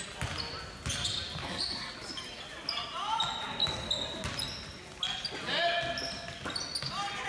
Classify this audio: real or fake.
real